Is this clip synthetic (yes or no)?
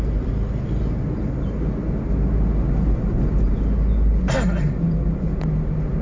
no